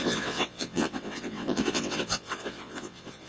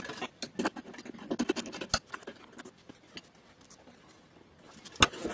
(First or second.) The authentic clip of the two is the second